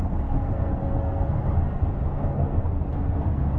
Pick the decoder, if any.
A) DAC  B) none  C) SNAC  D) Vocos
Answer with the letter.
C